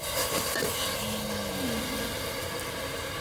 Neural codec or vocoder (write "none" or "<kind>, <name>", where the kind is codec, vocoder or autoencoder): none